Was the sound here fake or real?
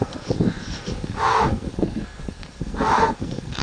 fake